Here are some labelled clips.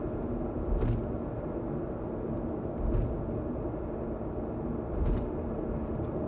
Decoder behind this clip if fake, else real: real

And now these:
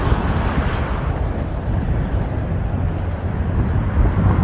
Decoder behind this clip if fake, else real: real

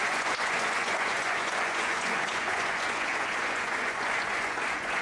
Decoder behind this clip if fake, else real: fake, vocoder, Vocos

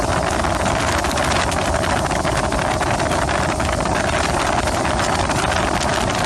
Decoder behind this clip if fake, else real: real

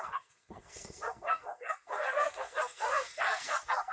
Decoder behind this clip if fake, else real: fake, codec, SNAC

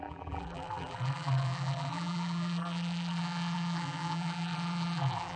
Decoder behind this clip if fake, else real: fake, vocoder, BigVGAN v2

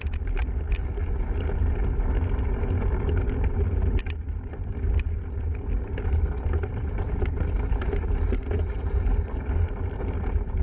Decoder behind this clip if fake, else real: real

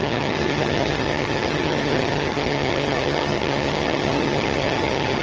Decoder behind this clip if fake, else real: fake, vocoder, HiFi-GAN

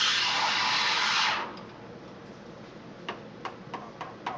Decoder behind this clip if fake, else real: real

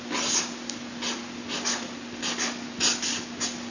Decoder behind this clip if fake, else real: real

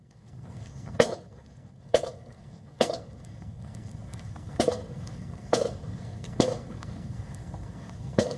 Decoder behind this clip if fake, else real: fake, codec, SNAC